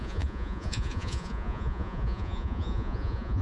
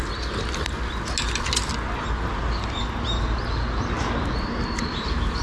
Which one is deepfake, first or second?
first